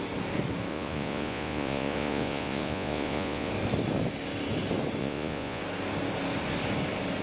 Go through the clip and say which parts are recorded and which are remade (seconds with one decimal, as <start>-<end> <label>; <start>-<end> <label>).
0.0-0.7 recorded; 0.7-3.5 remade; 3.5-5.0 recorded; 5.0-5.6 remade; 5.6-7.2 recorded